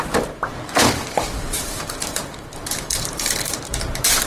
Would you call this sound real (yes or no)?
no